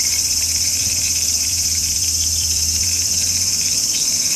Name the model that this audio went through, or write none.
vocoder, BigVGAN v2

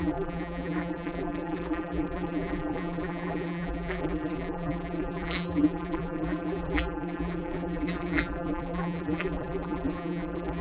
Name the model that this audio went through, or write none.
vocoder, BigVGAN v2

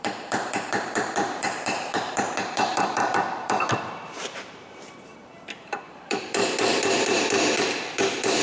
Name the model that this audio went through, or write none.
vocoder, BigVGAN v2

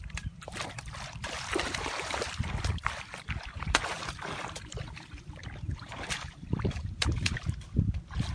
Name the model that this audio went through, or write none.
vocoder, BigVGAN v2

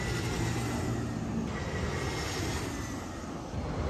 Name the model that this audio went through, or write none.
none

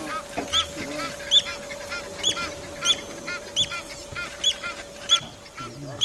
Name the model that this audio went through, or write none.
none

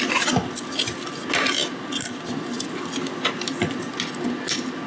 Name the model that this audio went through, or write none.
none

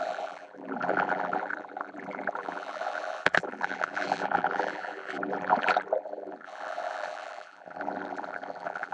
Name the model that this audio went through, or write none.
vocoder, BigVGAN v2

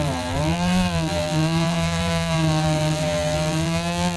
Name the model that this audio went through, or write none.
vocoder, BigVGAN v2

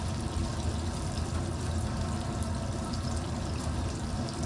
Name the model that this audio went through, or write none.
vocoder, BigVGAN v2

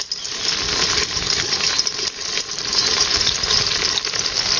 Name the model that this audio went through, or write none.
none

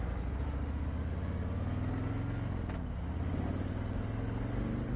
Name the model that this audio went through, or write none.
none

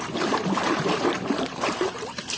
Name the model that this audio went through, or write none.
vocoder, BigVGAN v2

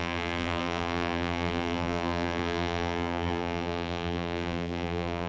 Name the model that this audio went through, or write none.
vocoder, BigVGAN v2